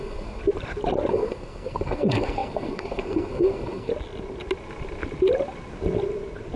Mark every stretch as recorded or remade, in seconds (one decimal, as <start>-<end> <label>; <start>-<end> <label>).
0.0-0.4 remade; 0.4-1.1 recorded; 1.1-3.9 remade; 3.9-6.6 recorded